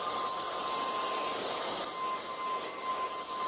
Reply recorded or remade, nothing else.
recorded